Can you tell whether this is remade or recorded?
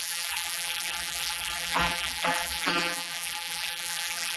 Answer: remade